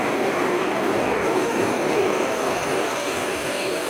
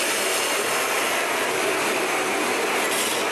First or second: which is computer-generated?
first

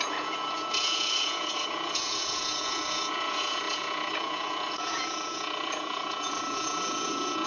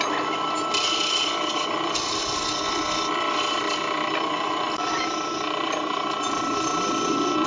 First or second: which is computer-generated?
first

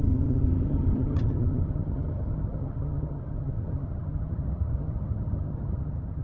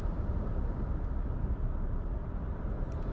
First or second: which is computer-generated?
first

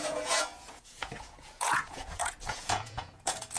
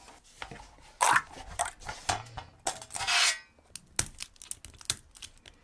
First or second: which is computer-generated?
first